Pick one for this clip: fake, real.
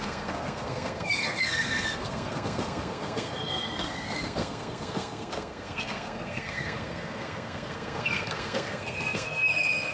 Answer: fake